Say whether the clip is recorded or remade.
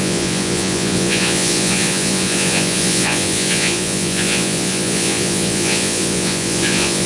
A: remade